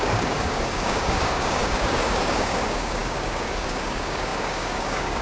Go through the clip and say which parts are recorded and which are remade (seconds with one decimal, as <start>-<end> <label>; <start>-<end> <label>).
0.0-5.2 remade